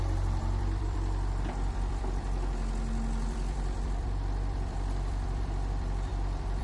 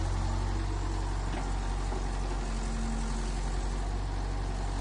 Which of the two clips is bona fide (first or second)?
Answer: second